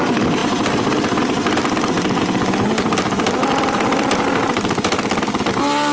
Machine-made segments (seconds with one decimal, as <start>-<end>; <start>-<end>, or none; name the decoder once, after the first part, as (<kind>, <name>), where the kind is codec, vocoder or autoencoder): none